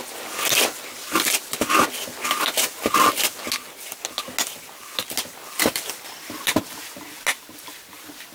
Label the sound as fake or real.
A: real